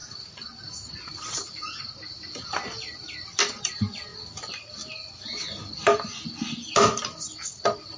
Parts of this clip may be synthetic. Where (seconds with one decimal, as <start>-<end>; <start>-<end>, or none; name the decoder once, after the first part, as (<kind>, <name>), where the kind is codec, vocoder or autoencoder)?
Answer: 0.0-2.2 (vocoder, BigVGAN v2)